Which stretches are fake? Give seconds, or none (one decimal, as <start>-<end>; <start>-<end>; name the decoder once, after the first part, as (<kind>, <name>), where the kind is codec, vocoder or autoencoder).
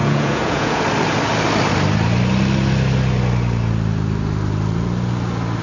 0.0-0.8 (vocoder, Vocos)